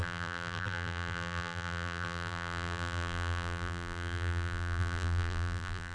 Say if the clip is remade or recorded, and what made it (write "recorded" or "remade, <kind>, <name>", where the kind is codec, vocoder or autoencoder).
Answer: remade, vocoder, BigVGAN v2